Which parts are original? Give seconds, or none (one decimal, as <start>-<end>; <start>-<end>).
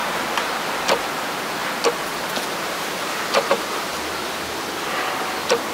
0.0-5.7